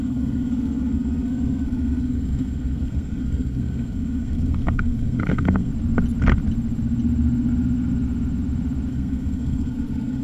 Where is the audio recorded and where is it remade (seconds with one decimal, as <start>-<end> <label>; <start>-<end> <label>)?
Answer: 0.0-5.7 remade; 5.7-8.9 recorded; 8.9-10.2 remade